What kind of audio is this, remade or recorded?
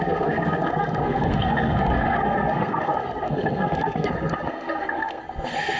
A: remade